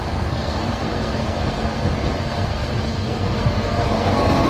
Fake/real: fake